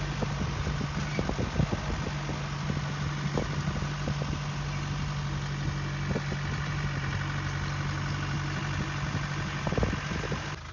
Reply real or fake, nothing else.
real